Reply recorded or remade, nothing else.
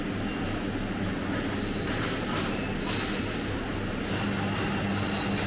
recorded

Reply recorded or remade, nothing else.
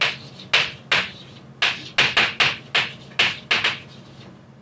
recorded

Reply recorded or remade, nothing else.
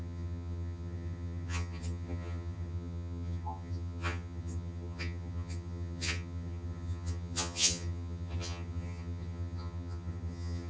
remade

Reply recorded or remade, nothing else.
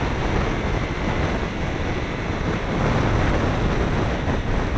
recorded